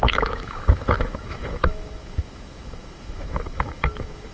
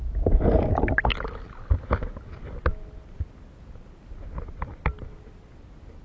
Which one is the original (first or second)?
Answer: second